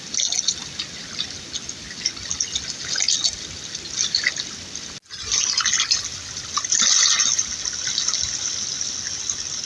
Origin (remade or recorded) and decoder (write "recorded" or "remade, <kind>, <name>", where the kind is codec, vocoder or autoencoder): recorded